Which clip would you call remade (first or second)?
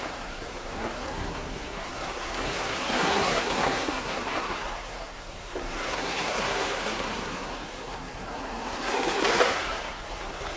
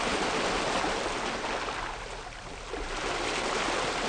first